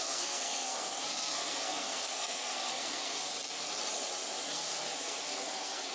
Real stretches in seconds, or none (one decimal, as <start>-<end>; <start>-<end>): 3.2-4.5